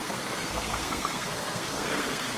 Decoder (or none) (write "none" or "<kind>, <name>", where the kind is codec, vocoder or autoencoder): codec, SNAC